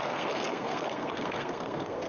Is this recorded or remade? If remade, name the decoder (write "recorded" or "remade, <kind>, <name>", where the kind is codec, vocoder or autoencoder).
remade, codec, SNAC